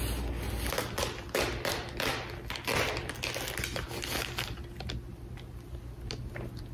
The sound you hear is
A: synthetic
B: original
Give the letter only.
B